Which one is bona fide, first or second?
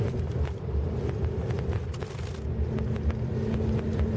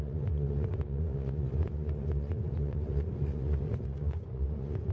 first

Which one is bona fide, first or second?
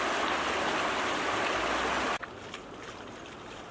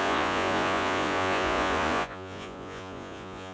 first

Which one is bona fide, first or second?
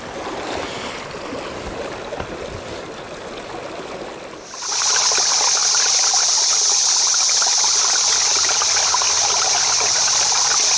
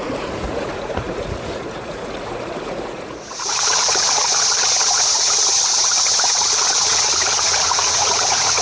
first